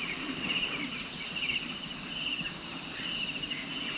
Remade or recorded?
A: recorded